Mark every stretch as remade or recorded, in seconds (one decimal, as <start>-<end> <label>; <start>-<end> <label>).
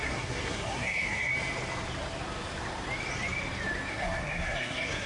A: 0.0-1.3 remade; 1.3-3.9 recorded; 3.9-5.1 remade